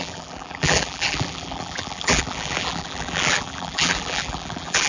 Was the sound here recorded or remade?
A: remade